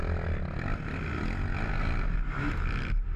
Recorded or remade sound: recorded